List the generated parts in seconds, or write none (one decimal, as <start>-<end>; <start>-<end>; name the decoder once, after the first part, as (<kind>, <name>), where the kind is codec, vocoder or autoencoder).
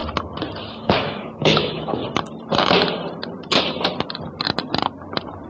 0.7-2.0 (autoencoder, DAC-VAE)